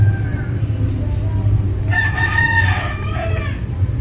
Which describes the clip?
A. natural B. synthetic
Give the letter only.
A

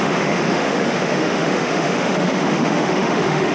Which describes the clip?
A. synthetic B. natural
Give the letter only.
A